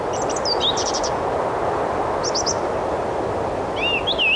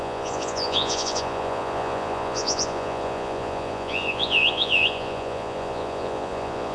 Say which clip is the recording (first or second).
first